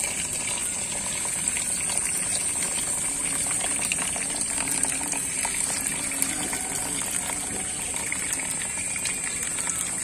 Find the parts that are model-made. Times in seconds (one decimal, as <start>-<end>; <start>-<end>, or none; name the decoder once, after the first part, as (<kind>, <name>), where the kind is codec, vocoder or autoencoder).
none